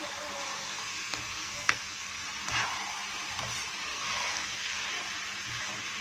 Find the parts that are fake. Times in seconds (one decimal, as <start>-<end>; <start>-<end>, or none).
0.6-2.2; 3.9-4.9